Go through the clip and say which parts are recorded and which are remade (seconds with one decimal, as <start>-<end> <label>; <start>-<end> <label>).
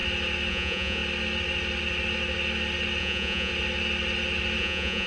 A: 0.0-0.5 recorded; 0.5-1.0 remade; 1.0-3.0 recorded; 3.0-3.5 remade; 3.5-4.6 recorded; 4.6-5.1 remade